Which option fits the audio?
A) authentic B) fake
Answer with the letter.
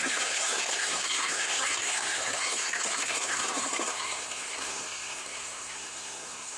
B